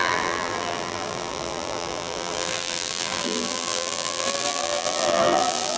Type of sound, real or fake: fake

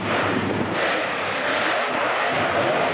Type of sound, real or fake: fake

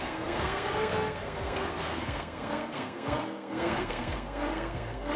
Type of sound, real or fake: fake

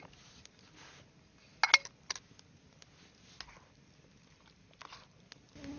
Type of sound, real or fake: real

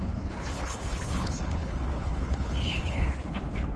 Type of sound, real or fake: fake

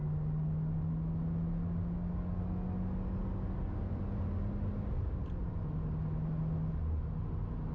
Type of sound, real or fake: real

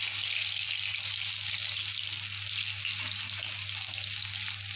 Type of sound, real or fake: real